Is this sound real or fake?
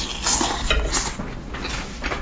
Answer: real